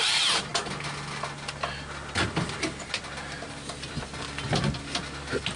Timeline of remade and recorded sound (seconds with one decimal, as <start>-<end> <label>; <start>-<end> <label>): 0.0-5.6 recorded